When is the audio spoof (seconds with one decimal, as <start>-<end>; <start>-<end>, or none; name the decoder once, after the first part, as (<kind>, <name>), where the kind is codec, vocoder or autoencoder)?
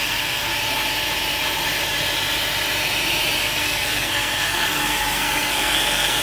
0.0-0.5 (codec, SNAC); 3.4-6.2